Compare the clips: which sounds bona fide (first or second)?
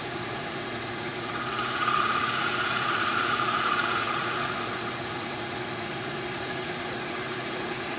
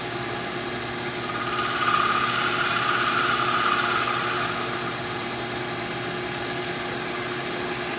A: second